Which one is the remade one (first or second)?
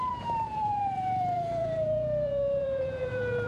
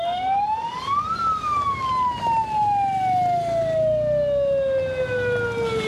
first